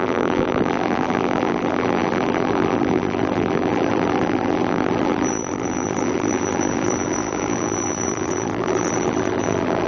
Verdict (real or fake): fake